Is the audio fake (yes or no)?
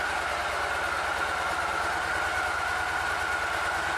no